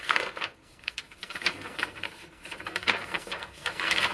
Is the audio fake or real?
fake